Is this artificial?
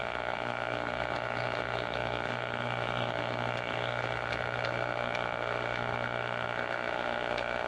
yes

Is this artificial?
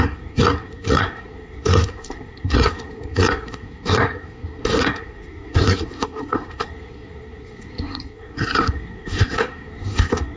yes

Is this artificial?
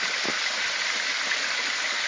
no